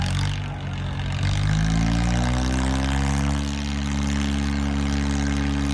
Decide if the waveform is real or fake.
real